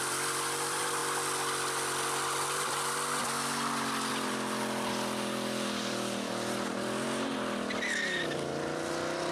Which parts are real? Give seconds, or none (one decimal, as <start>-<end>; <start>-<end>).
1.0-4.1